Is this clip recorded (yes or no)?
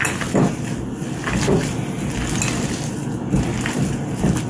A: yes